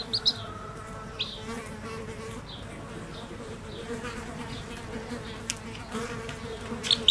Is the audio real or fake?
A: real